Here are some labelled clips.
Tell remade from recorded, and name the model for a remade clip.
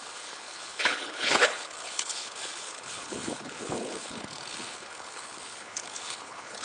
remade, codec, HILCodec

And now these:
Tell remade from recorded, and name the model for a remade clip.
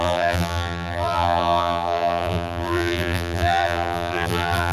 remade, vocoder, BigVGAN v2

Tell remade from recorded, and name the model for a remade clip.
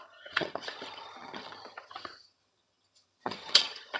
remade, vocoder, HiFi-GAN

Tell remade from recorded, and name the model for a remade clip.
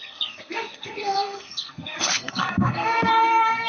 remade, codec, SNAC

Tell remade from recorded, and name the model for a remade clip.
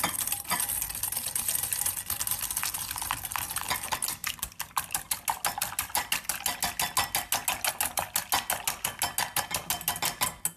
recorded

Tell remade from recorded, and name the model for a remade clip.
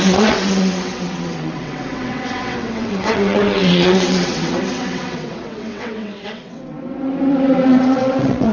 remade, vocoder, WaveNeXt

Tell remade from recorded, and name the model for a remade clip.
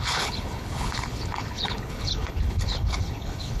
remade, codec, HILCodec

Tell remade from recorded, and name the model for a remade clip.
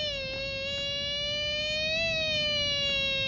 recorded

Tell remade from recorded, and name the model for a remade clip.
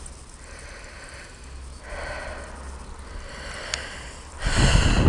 recorded